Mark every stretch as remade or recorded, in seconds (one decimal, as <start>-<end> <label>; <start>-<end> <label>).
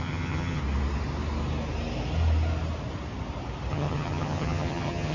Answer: 0.0-0.6 remade; 0.6-3.7 recorded; 3.7-5.1 remade